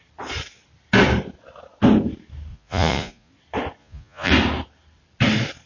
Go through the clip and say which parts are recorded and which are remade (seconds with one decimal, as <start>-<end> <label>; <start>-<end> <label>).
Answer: 0.0-2.5 recorded; 2.5-3.3 remade; 3.3-3.8 recorded; 3.8-4.3 remade; 4.3-5.7 recorded